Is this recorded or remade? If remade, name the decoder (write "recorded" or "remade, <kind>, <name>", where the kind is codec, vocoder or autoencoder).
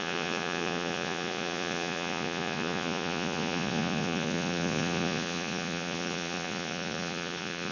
remade, vocoder, Vocos